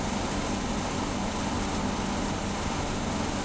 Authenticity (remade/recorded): recorded